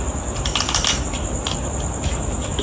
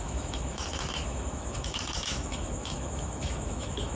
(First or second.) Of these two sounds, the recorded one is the first